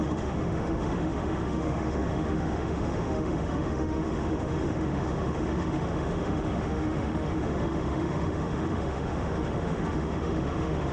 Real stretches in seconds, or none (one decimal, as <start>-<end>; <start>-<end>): none